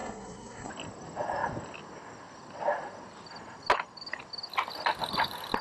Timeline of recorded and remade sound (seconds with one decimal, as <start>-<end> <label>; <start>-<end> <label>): 0.0-0.7 remade; 0.7-5.6 recorded